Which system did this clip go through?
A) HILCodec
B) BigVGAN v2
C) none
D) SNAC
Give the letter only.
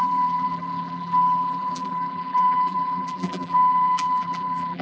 B